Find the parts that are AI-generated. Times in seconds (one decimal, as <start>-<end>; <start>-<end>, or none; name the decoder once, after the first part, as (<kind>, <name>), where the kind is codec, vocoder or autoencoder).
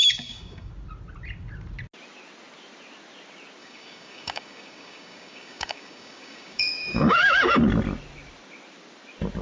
0.0-0.7 (codec, DAC); 3.6-7.6